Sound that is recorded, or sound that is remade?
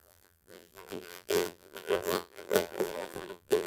remade